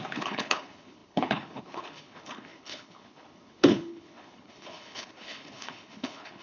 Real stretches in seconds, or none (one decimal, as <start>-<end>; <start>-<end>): none